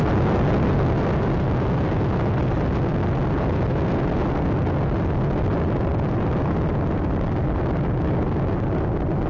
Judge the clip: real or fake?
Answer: real